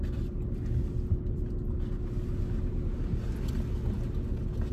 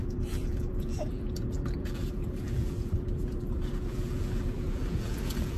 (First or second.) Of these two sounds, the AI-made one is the second